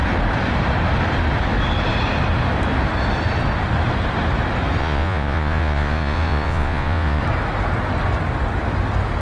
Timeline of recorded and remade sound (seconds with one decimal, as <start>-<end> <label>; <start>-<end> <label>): 0.0-4.8 recorded; 4.8-7.2 remade; 7.2-9.2 recorded